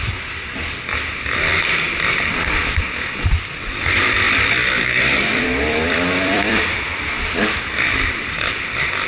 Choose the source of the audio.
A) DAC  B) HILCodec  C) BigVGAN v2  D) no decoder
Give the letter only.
C